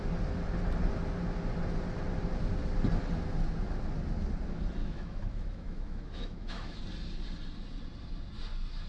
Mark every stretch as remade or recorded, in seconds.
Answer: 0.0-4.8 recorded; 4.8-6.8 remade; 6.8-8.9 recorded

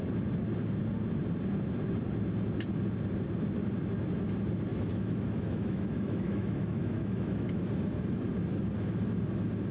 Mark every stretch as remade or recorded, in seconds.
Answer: 0.0-4.7 recorded; 4.7-7.6 remade; 7.6-9.7 recorded

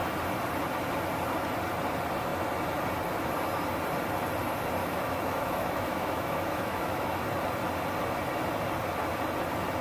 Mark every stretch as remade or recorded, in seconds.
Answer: 0.0-4.8 recorded; 4.8-7.2 remade; 7.2-9.8 recorded

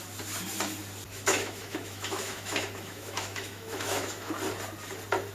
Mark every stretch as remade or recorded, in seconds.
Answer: 0.0-1.1 recorded; 1.1-4.3 remade; 4.3-5.3 recorded

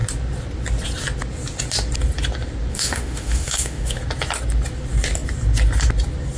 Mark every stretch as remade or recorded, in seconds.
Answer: 0.0-2.7 recorded; 2.7-4.0 remade; 4.0-6.4 recorded